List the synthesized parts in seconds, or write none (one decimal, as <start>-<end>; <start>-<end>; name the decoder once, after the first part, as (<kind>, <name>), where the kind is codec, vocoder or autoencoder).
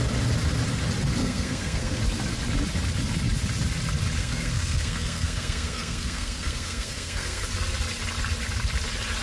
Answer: 1.2-2.0 (codec, SNAC); 4.2-7.4